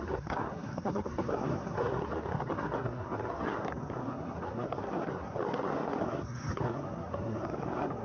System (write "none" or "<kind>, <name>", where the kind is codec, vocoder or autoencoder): codec, SNAC